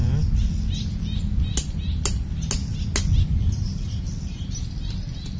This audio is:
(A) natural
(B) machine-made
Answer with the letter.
A